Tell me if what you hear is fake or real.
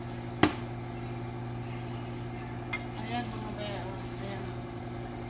real